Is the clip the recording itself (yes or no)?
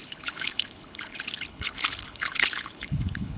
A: no